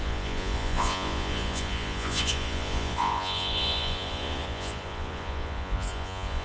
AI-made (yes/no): yes